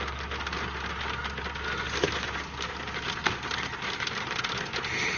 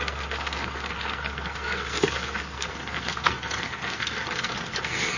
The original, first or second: first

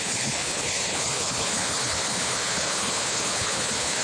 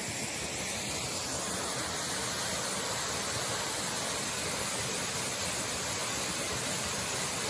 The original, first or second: second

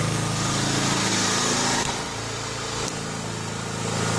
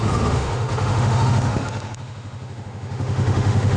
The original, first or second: first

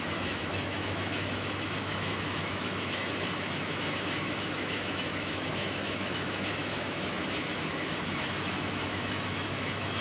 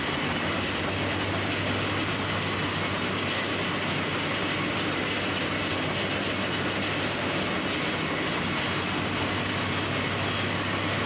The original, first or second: second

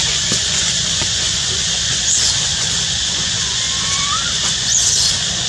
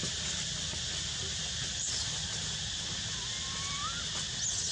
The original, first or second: second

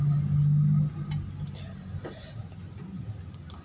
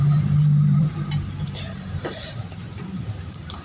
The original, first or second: first